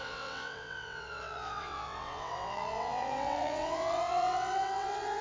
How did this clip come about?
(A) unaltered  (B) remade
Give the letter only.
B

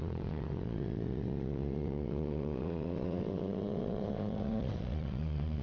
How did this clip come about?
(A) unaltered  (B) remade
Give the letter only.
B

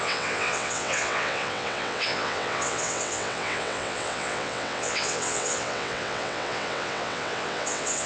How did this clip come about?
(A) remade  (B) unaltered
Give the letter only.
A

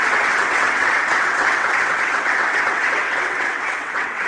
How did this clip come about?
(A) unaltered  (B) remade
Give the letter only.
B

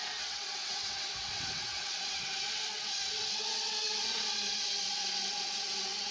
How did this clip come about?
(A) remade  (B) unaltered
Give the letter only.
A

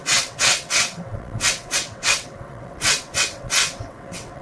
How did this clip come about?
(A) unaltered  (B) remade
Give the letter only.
B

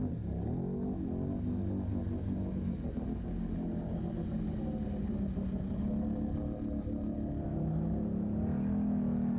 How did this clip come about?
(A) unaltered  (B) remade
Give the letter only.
A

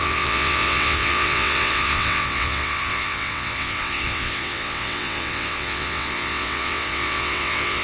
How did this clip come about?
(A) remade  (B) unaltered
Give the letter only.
A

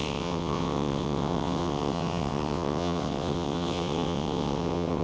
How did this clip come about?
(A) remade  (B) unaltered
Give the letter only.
A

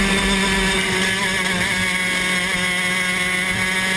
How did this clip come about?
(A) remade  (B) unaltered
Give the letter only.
B